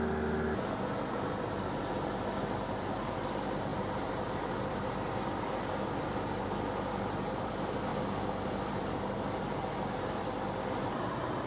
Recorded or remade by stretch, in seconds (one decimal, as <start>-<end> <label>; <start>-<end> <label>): 0.0-11.5 recorded